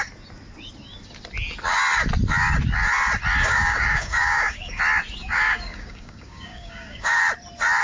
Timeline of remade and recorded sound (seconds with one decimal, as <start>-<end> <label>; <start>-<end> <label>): 0.0-3.4 recorded; 3.4-4.8 remade; 4.8-5.2 recorded; 5.2-7.2 remade; 7.2-7.8 recorded